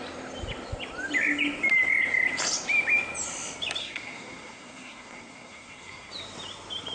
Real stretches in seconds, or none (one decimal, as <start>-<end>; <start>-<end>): 0.0-3.8; 6.1-6.9